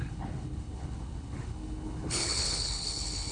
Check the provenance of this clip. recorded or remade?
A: remade